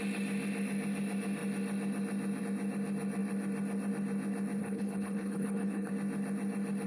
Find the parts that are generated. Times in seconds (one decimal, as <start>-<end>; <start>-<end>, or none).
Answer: 4.6-5.9